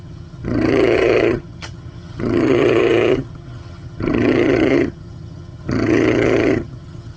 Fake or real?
fake